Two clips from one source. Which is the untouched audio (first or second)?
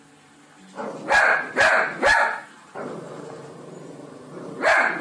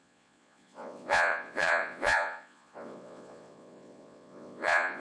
first